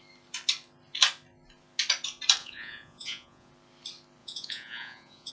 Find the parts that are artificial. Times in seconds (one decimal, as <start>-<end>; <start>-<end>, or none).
2.4-3.5; 4.2-5.3